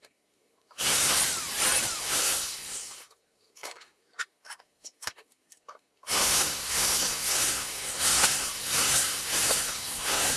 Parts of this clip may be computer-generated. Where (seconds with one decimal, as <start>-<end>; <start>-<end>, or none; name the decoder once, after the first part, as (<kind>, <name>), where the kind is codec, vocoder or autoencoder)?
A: 0.0-1.2 (codec, SNAC); 2.0-10.4